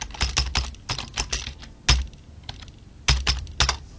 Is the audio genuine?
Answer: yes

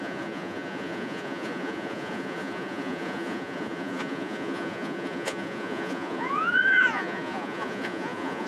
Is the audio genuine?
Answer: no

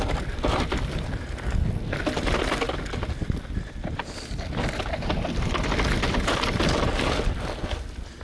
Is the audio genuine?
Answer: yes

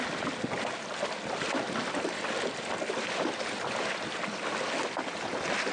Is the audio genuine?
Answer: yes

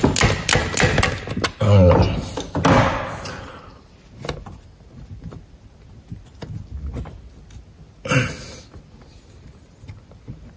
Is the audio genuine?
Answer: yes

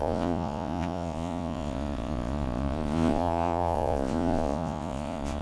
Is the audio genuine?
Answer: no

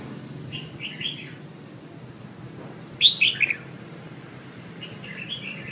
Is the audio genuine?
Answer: yes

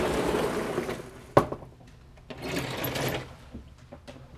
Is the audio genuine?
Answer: yes